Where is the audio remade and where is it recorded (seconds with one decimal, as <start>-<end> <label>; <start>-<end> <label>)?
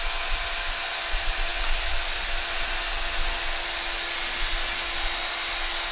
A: 0.0-5.9 recorded